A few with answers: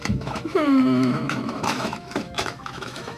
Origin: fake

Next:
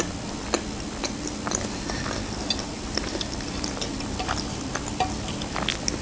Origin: real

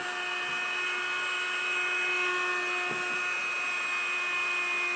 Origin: real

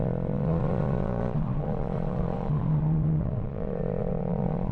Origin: fake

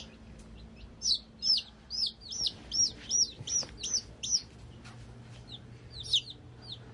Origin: fake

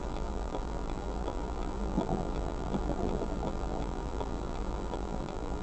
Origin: fake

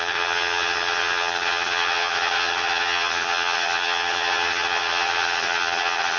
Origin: fake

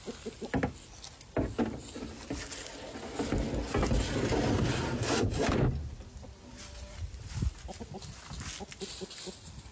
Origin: real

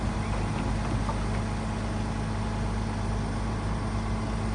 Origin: real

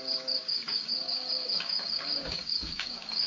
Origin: fake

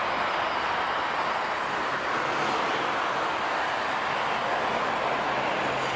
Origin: real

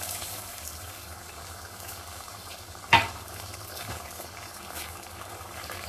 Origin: fake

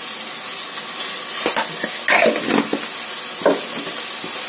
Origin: real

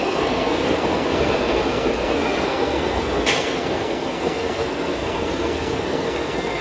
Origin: fake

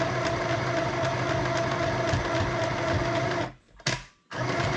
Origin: real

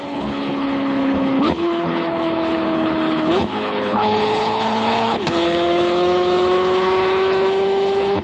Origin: fake